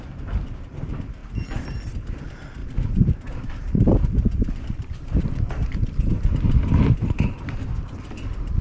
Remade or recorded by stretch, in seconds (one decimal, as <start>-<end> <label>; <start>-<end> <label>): 0.0-1.2 recorded; 1.2-1.8 remade; 1.8-2.6 recorded; 2.6-6.1 remade; 6.1-8.6 recorded